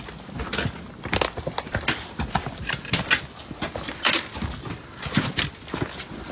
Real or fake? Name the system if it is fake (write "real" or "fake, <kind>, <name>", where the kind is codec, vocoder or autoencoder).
real